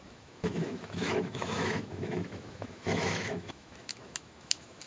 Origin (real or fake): fake